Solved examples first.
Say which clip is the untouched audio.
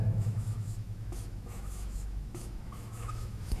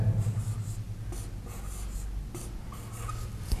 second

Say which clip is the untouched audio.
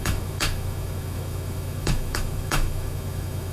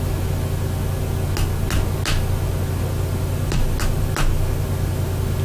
second